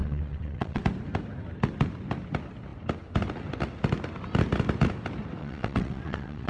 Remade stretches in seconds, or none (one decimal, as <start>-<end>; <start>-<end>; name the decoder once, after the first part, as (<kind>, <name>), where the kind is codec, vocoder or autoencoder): 0.0-0.8 (vocoder, WaveNeXt); 5.4-6.5